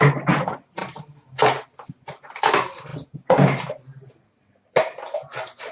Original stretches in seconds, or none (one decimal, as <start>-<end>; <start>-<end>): 0.0-5.7